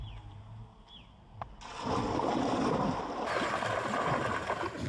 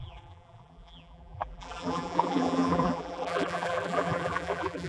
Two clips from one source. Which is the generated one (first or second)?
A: second